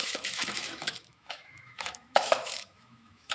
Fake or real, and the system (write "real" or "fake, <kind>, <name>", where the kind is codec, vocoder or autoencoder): fake, autoencoder, DAC-VAE